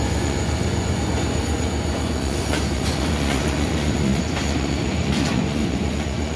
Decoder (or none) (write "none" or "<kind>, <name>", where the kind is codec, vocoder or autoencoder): vocoder, Vocos